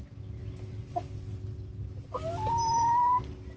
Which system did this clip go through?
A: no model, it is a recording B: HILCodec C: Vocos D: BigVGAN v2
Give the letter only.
A